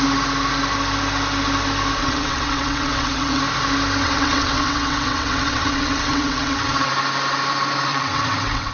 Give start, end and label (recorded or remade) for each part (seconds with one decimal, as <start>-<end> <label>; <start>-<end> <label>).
0.0-2.0 recorded; 2.0-3.4 remade; 3.4-4.0 recorded; 4.0-6.9 remade; 6.9-7.9 recorded; 7.9-8.7 remade